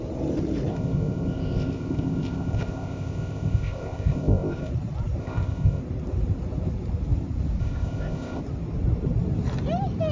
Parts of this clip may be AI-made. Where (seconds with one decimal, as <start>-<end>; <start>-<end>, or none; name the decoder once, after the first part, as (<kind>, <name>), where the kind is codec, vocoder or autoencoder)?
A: 0.7-4.7 (codec, ZipCodec); 5.2-5.8; 7.6-8.4